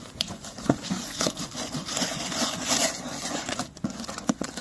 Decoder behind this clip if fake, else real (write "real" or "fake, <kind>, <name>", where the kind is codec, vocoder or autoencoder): fake, vocoder, Vocos